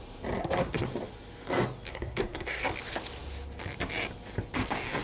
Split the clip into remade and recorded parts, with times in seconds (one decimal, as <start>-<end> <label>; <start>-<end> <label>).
0.0-0.4 recorded; 0.4-0.9 remade; 0.9-1.9 recorded; 1.9-2.6 remade; 2.6-5.0 recorded